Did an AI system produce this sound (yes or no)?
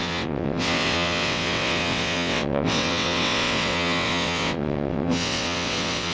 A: yes